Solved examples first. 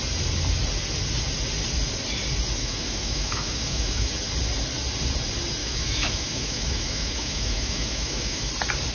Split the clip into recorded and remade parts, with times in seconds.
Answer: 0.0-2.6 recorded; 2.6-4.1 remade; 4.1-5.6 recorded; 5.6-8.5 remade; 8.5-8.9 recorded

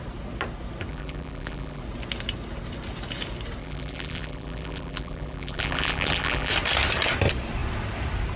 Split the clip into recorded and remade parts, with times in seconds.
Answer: 0.0-0.9 recorded; 0.9-1.8 remade; 1.8-3.6 recorded; 3.6-6.5 remade; 6.5-8.4 recorded

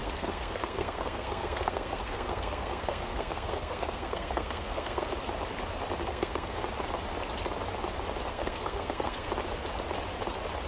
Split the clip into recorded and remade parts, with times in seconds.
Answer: 0.0-5.1 remade; 5.1-6.0 recorded; 6.0-6.6 remade; 6.6-8.3 recorded; 8.3-9.3 remade; 9.3-10.7 recorded

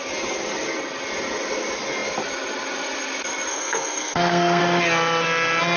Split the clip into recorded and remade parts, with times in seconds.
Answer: 0.0-3.5 recorded; 3.5-4.6 remade; 4.6-5.8 recorded

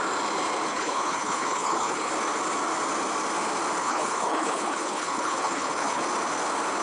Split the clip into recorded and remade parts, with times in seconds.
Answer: 0.0-0.7 recorded; 0.7-2.1 remade; 2.1-3.8 recorded; 3.8-6.0 remade; 6.0-6.8 recorded

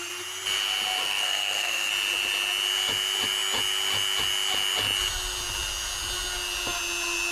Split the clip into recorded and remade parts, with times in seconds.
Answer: 0.0-1.0 recorded; 1.0-1.9 remade; 1.9-7.3 recorded